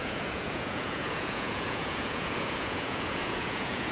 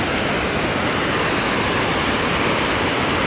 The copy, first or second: first